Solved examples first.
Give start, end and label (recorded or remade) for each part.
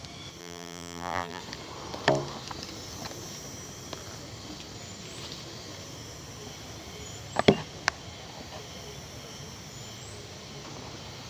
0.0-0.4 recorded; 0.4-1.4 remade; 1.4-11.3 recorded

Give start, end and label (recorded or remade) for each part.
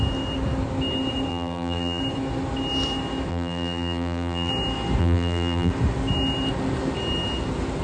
0.0-1.3 recorded; 1.3-2.0 remade; 2.0-3.3 recorded; 3.3-4.5 remade; 4.5-5.0 recorded; 5.0-5.7 remade; 5.7-7.8 recorded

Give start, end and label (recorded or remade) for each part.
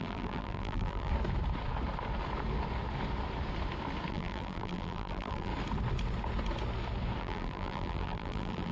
0.0-1.1 remade; 1.1-4.1 recorded; 4.1-5.5 remade; 5.5-7.2 recorded; 7.2-8.7 remade